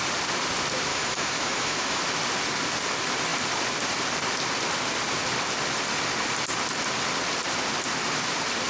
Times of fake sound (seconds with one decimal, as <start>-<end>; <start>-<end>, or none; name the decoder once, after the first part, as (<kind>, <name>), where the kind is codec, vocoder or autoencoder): 0.9-2.0 (autoencoder, DAC-VAE)